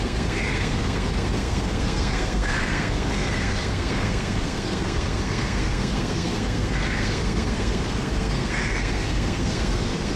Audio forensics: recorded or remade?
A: remade